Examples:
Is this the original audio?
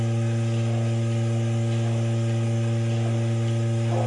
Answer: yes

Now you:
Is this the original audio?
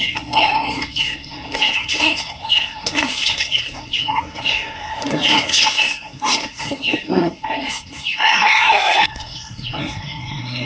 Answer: no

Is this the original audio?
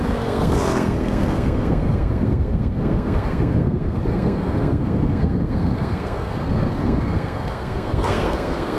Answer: no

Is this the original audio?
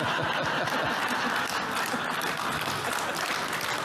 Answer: yes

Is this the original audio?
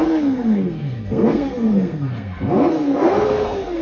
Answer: no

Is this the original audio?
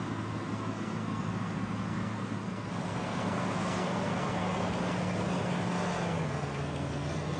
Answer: no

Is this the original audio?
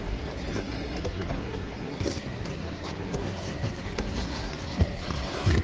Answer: no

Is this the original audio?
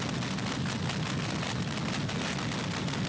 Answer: yes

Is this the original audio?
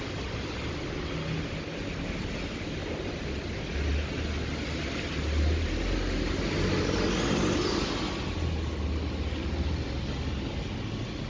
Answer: yes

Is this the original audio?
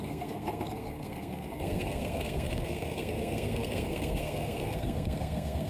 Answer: no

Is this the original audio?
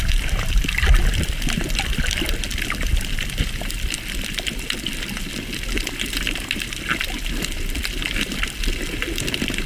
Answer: yes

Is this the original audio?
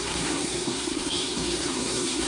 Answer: no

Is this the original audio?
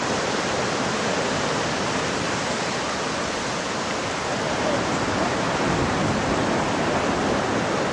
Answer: yes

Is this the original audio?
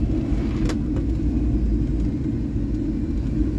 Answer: yes